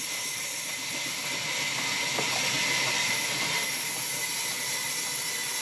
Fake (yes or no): no